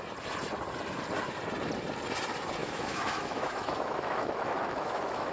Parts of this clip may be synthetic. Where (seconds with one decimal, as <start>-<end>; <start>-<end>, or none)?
2.6-5.3